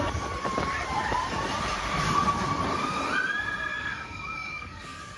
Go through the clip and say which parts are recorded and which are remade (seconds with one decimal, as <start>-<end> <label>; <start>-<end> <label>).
0.0-3.7 recorded; 3.7-5.2 remade